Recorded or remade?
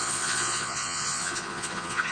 remade